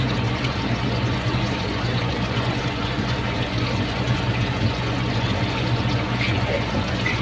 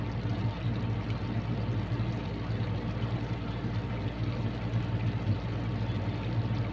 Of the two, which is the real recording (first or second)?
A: second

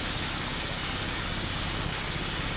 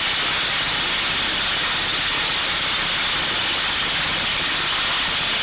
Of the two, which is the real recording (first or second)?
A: second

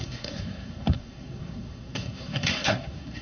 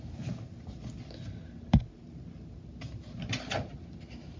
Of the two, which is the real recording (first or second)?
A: second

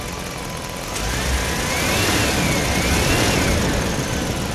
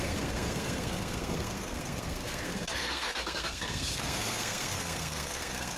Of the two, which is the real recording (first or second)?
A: first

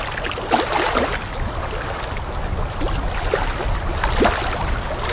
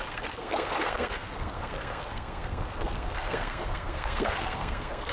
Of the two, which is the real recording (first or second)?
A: first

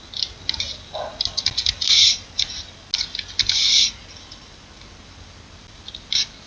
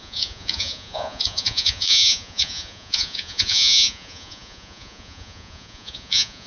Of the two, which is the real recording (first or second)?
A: first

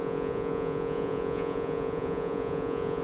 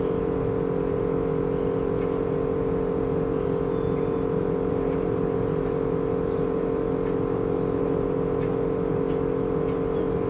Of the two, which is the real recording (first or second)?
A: second